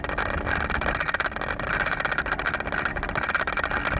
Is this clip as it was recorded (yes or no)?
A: yes